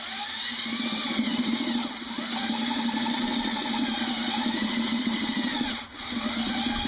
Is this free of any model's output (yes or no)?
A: no